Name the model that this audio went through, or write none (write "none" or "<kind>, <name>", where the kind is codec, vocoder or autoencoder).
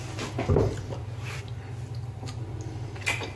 none